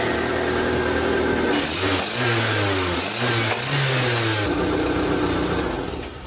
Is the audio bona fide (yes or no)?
yes